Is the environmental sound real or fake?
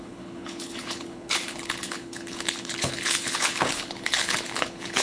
fake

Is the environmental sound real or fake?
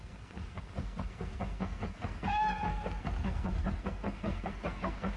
fake